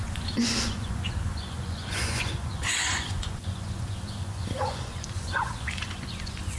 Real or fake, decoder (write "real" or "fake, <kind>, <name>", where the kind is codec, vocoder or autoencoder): fake, vocoder, Vocos